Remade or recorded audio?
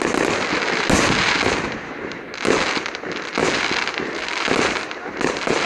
recorded